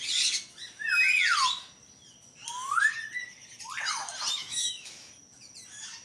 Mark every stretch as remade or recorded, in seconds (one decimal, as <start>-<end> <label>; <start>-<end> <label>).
0.0-4.3 recorded; 4.3-5.1 remade; 5.1-6.0 recorded